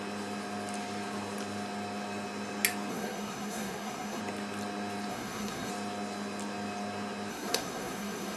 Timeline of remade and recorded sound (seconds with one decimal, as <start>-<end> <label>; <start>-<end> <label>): 0.0-2.9 recorded; 2.9-4.2 remade; 4.2-5.1 recorded; 5.1-5.7 remade; 5.7-7.3 recorded; 7.3-8.4 remade